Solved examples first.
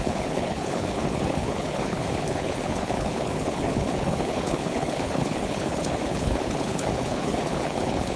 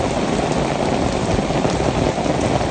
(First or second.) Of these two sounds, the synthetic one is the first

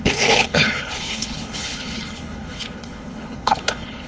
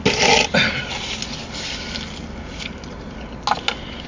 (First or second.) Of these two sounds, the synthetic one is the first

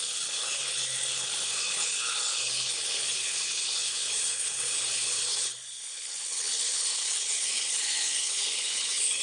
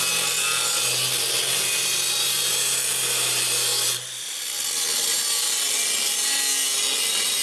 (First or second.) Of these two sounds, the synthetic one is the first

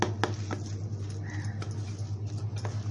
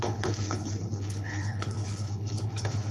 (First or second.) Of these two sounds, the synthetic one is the second